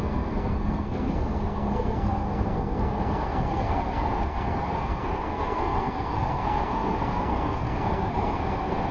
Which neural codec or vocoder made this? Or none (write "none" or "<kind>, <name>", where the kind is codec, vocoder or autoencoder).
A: codec, SNAC